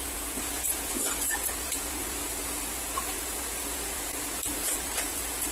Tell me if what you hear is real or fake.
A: fake